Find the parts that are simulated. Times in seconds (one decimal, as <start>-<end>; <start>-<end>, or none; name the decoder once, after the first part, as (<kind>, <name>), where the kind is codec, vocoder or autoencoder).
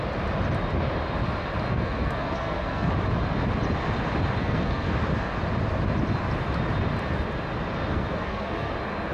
1.7-2.9 (codec, SNAC); 4.4-4.9; 7.9-8.7